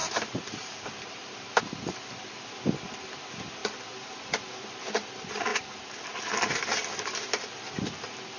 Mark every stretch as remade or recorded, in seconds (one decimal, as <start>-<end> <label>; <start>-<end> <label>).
0.0-1.6 remade; 1.6-5.5 recorded; 5.5-6.2 remade; 6.2-8.4 recorded